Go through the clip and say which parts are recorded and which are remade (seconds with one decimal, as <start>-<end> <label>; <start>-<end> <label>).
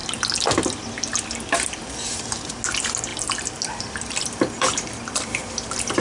0.0-6.0 recorded